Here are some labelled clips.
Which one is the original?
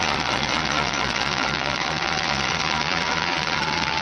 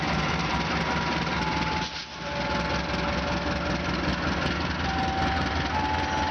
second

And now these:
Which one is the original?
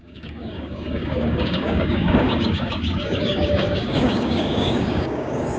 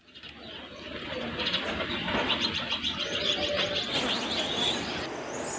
second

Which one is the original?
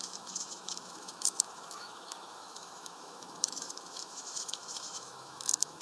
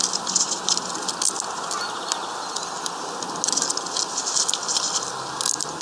second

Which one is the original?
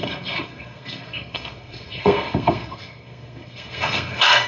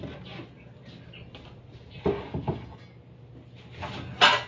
second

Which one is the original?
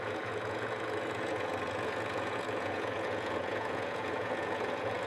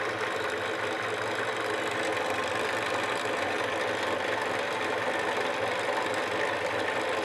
second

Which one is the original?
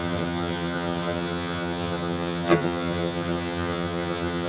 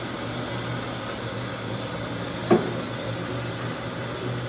second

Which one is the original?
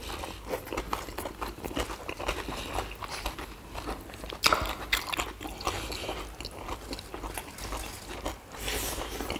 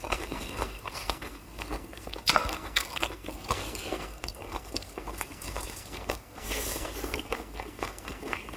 first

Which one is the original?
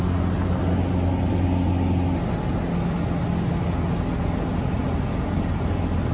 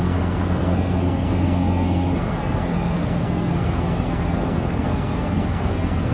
first